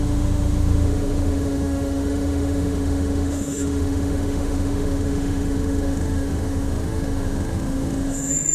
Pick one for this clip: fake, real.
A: fake